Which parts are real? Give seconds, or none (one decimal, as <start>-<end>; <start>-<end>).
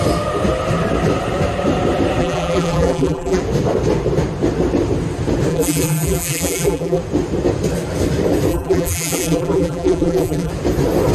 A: 0.0-2.2; 3.4-5.5; 7.0-8.5; 10.5-11.1